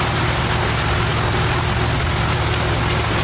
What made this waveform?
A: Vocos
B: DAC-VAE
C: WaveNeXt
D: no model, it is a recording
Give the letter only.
D